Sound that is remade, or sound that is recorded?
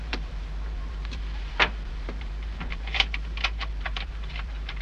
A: remade